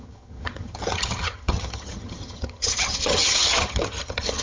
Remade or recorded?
remade